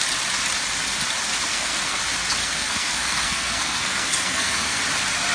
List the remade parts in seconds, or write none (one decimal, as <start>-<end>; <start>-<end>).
1.5-2.0; 2.4-4.8

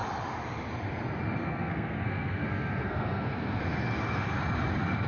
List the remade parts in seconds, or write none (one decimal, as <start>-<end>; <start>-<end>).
1.4-3.6